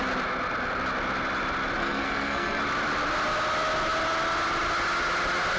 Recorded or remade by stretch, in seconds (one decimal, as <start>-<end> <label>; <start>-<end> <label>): 0.0-1.8 recorded; 1.8-2.6 remade; 2.6-5.6 recorded